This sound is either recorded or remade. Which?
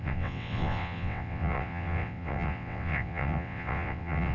remade